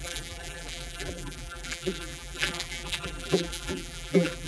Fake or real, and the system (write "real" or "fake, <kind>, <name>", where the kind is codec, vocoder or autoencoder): fake, vocoder, BigVGAN v2